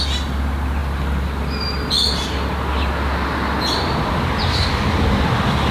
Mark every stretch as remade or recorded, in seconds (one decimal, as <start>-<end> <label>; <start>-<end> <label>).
0.0-0.8 recorded; 0.8-4.2 remade; 4.2-5.7 recorded